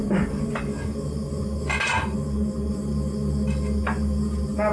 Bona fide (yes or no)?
yes